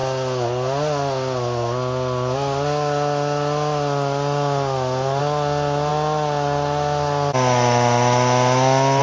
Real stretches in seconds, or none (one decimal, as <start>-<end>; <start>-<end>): 0.0-9.0